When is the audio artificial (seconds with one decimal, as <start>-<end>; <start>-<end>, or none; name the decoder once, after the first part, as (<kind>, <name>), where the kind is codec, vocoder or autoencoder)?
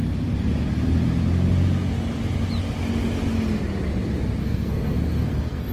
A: 4.4-5.7 (codec, SNAC)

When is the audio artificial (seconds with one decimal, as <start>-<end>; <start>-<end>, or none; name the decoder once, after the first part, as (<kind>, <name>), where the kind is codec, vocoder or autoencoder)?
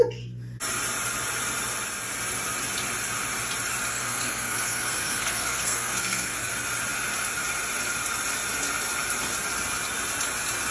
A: 3.9-6.5 (codec, SNAC)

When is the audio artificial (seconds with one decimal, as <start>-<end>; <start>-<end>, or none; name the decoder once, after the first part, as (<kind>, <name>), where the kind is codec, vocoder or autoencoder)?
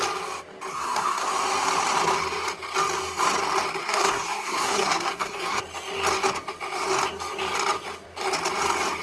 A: 0.7-1.3 (codec, SNAC); 3.8-5.6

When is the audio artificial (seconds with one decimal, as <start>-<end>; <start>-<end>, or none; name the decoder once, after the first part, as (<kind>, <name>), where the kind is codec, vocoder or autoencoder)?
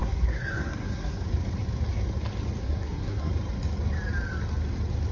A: 0.0-1.2 (codec, SNAC); 2.6-3.3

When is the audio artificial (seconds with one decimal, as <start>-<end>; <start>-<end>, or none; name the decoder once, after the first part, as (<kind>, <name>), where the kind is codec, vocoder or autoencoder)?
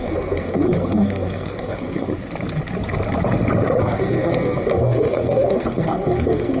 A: 0.0-2.1 (codec, SNAC); 3.8-6.6